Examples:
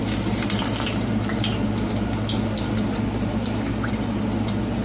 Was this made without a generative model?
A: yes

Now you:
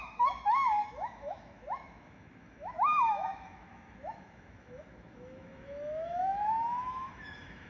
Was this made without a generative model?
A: no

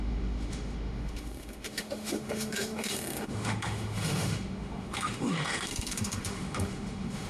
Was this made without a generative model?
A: no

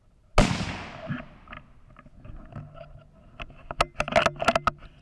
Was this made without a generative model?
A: yes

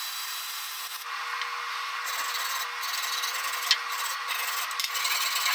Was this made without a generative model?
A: yes